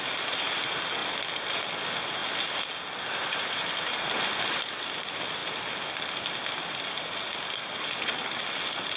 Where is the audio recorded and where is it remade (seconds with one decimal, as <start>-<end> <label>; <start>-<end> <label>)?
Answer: 0.0-9.0 recorded